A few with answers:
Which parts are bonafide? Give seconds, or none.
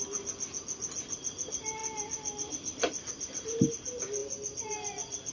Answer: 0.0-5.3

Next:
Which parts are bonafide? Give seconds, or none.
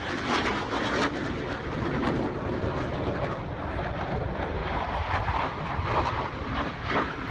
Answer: 0.0-7.3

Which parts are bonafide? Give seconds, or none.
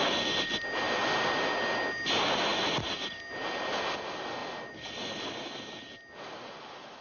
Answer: 0.0-7.0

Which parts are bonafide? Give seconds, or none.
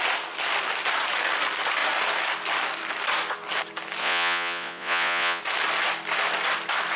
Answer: 0.0-4.0; 5.4-7.0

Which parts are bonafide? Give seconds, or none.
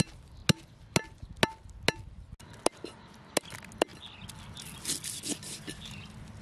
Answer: 0.0-6.4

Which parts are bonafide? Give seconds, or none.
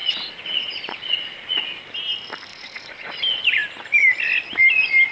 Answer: 1.8-2.5; 3.2-5.1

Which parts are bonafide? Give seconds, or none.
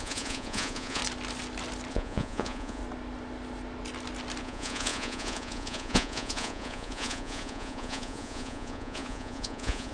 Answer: 1.0-1.9; 2.8-4.4